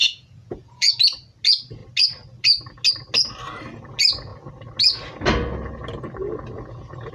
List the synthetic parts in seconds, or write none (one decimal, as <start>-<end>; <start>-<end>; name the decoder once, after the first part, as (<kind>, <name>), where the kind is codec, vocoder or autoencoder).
0.0-0.9 (vocoder, Vocos)